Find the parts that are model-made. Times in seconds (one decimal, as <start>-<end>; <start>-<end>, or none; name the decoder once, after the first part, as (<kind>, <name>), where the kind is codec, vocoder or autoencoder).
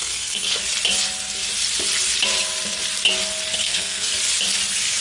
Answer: 0.0-0.6 (codec, SNAC); 3.6-4.1